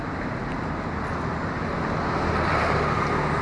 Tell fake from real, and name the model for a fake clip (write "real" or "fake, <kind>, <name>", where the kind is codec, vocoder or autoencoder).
real